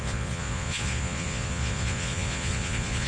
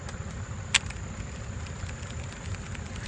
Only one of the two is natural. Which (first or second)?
second